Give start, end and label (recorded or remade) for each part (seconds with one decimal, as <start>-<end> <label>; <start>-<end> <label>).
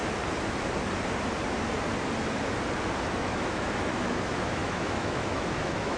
0.0-3.1 recorded; 3.1-6.0 remade